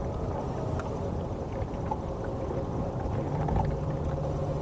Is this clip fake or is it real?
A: real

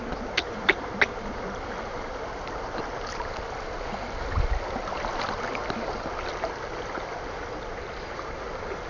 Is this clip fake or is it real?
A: real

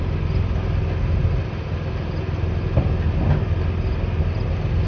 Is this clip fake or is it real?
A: real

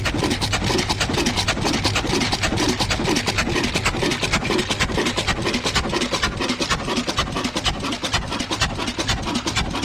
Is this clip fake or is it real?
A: real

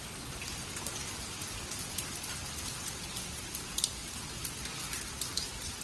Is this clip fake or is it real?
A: real